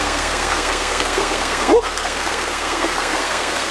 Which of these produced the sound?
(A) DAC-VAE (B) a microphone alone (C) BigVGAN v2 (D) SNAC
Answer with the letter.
D